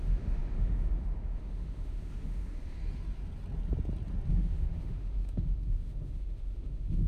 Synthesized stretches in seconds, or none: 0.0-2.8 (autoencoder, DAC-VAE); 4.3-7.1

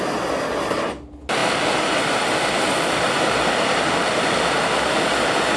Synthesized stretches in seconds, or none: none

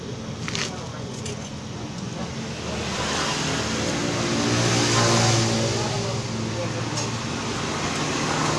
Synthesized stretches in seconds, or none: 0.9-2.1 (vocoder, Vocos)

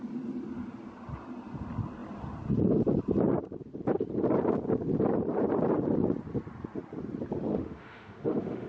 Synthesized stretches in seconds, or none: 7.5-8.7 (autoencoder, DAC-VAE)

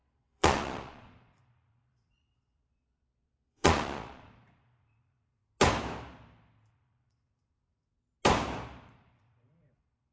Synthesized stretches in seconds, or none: 0.0-5.4 (vocoder, Vocos); 6.7-7.7; 8.8-10.1

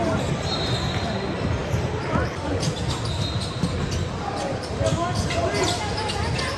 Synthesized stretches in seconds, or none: none

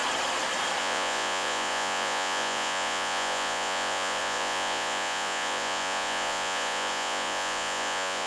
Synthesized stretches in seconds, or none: 0.8-8.3 (vocoder, Vocos)